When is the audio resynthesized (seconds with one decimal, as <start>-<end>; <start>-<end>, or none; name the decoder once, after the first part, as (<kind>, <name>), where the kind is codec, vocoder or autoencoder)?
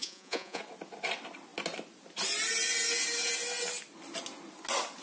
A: 0.0-0.6 (vocoder, Vocos)